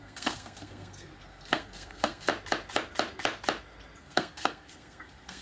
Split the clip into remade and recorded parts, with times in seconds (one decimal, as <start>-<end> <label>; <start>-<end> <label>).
0.0-2.3 remade; 2.3-4.0 recorded; 4.0-5.4 remade